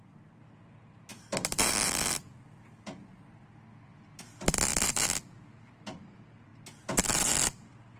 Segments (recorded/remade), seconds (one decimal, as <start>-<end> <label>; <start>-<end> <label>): 0.0-8.0 recorded